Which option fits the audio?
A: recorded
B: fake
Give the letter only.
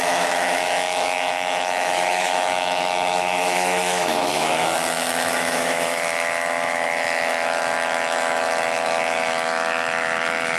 B